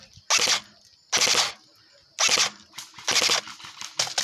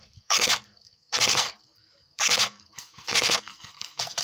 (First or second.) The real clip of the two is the first